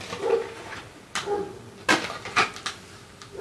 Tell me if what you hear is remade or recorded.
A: recorded